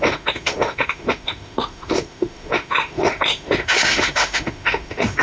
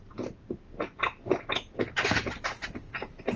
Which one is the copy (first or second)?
first